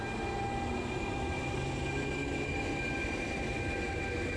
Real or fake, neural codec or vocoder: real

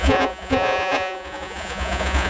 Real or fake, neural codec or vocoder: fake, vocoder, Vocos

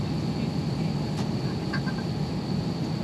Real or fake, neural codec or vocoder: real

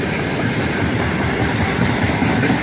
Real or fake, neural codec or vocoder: real